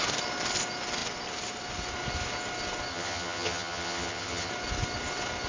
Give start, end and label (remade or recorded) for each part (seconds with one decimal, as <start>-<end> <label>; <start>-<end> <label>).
0.0-2.9 recorded; 2.9-4.5 remade; 4.5-5.5 recorded